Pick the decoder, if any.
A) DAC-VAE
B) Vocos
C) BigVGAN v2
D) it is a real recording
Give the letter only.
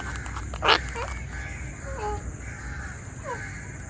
D